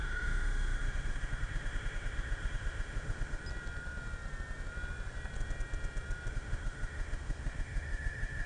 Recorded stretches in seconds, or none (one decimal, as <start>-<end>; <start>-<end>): 3.4-6.3